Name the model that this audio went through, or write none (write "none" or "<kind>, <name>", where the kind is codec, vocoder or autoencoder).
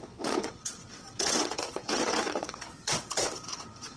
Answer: vocoder, WaveNeXt